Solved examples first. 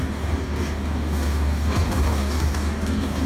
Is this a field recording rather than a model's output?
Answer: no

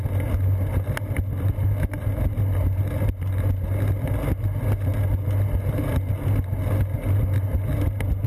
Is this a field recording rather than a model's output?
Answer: yes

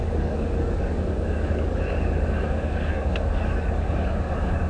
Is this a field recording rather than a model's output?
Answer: no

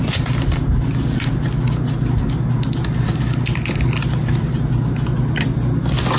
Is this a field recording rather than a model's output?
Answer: yes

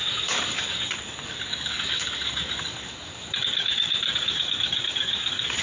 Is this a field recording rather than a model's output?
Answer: no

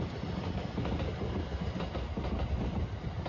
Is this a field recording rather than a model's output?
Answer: yes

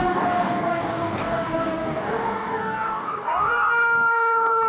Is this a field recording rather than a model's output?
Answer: no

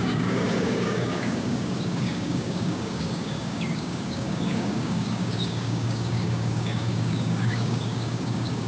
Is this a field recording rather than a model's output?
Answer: no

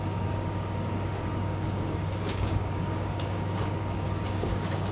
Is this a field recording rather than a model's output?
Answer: no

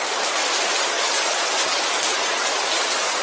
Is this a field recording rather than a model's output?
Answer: yes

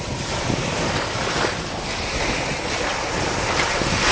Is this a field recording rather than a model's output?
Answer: yes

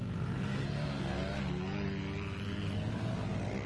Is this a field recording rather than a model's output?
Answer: yes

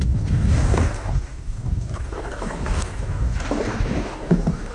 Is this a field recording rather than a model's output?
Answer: no